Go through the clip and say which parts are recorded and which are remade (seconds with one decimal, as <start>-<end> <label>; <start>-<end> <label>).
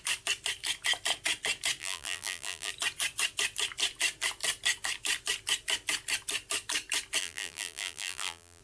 0.0-1.8 recorded; 1.8-2.7 remade; 2.7-7.2 recorded; 7.2-8.6 remade